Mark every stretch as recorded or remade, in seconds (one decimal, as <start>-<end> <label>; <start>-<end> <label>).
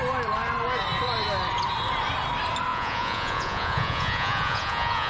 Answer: 0.0-2.7 recorded; 2.7-5.1 remade